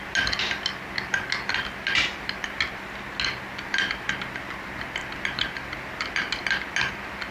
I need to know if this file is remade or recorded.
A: recorded